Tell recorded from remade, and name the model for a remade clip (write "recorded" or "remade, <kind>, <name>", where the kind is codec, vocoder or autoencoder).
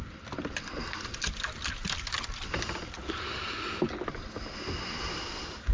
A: recorded